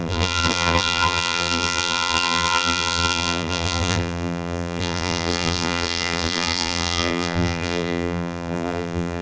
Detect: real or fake fake